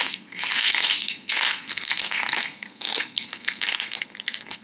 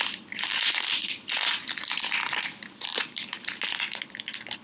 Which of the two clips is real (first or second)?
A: second